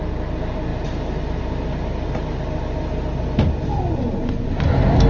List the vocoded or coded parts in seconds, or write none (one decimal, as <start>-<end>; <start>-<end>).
none